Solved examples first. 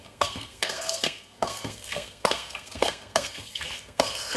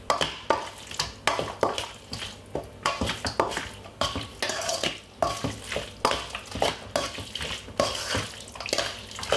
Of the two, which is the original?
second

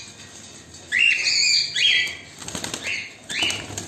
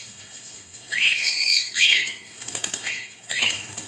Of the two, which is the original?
first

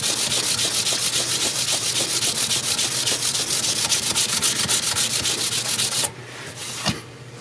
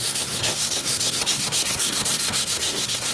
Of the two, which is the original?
first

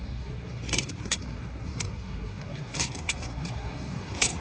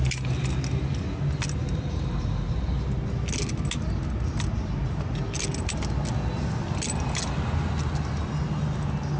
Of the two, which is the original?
second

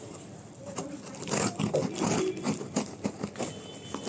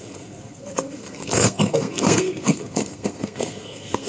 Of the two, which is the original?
first